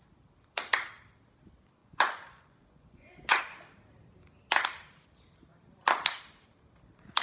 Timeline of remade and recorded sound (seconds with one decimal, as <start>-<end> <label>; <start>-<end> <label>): 0.0-1.8 recorded; 1.8-3.4 remade; 3.4-7.2 recorded